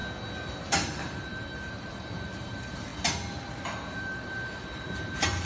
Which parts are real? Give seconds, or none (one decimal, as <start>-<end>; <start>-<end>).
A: 0.0-0.6; 2.9-3.5